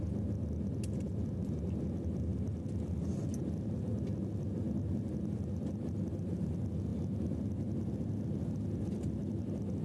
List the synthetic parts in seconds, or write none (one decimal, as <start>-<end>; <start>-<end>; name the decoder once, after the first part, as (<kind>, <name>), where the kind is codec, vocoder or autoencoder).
none